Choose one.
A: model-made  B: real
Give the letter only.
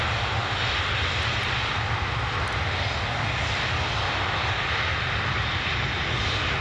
B